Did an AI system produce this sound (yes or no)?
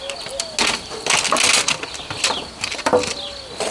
no